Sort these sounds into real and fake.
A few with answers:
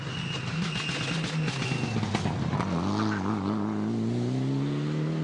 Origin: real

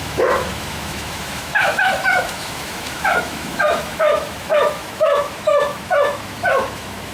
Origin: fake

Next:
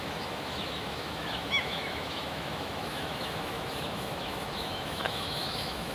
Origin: fake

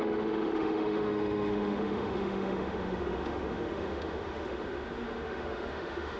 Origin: fake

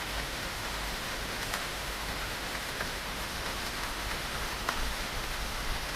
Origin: fake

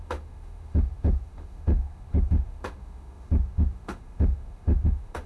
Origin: fake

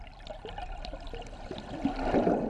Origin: real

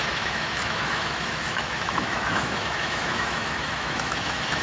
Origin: fake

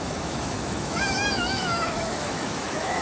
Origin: fake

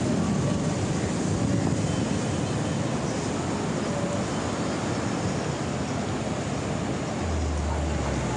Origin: real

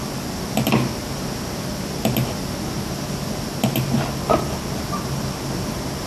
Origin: real